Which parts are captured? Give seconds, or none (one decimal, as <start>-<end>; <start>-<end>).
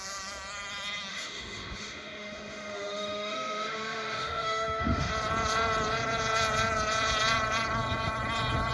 0.0-1.1; 5.1-8.7